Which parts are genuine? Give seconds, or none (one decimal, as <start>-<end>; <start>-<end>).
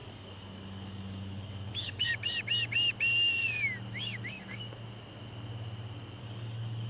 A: 2.1-6.2